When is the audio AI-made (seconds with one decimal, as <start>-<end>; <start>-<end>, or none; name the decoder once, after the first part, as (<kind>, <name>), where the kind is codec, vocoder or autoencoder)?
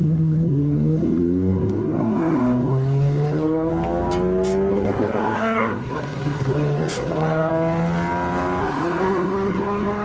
0.0-3.7 (codec, SNAC); 4.7-7.5; 8.6-10.0